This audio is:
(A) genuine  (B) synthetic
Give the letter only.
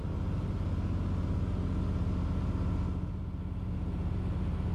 A